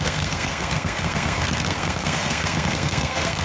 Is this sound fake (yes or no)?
yes